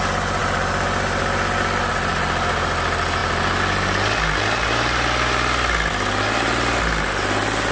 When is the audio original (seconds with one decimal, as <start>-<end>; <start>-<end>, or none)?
0.0-7.7